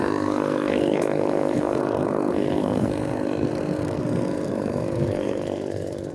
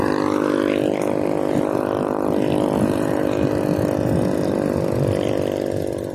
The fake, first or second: first